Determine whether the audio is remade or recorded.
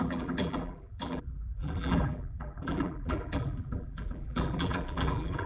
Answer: remade